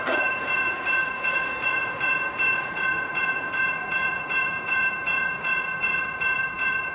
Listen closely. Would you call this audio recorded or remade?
remade